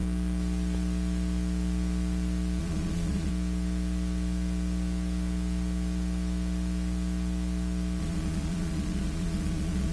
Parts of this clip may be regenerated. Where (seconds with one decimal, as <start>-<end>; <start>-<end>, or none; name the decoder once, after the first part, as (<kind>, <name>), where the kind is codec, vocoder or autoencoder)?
2.6-3.3 (vocoder, Vocos); 8.0-9.9